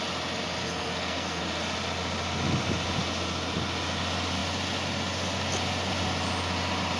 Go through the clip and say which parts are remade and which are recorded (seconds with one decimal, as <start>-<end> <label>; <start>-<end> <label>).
0.0-0.6 recorded; 0.6-1.4 remade; 1.4-7.0 recorded